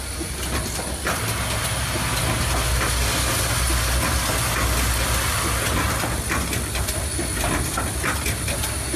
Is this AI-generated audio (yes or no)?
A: no